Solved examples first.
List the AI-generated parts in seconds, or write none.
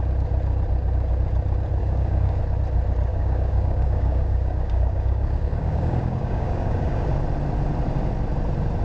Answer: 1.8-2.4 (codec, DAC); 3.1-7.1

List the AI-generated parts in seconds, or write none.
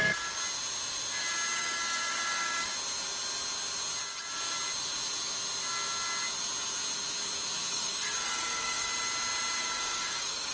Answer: 0.0-0.4 (codec, DAC); 1.5-2.7; 7.7-8.9; 9.6-10.5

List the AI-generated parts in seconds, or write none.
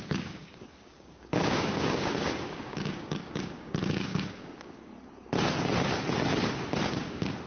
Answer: 0.0-4.9 (codec, DAC); 6.9-7.5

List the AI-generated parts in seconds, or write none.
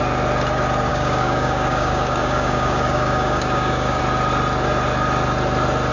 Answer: 0.9-4.0 (codec, DAC)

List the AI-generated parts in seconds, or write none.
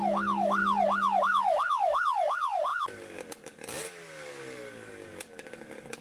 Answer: 0.0-0.6 (codec, DAC); 1.2-6.0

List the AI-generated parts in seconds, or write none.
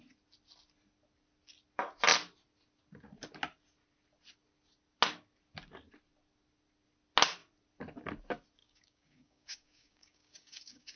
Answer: 8.6-11.0 (codec, DAC)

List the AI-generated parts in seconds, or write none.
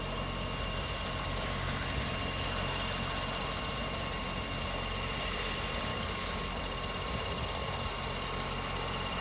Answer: 5.9-6.6 (codec, DAC)